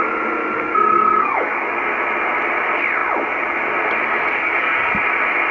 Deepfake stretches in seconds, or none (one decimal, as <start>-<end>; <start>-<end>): 0.4-1.8; 4.4-5.0